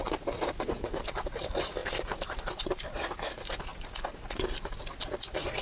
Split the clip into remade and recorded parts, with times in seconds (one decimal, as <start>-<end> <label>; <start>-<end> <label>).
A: 0.0-5.6 recorded